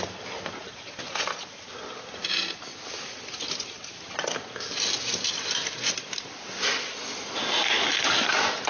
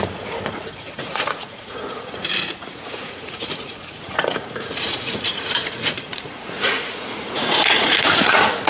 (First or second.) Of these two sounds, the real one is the first